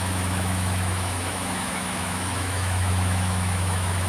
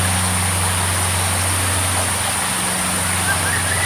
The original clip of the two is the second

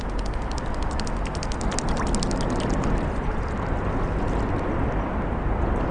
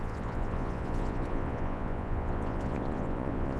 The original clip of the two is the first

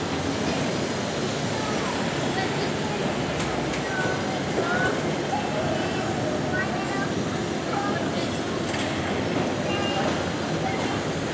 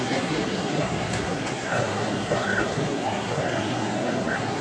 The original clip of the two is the first